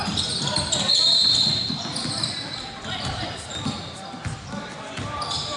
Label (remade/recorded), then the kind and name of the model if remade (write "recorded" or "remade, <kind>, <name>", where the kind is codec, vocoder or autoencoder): remade, vocoder, BigVGAN v2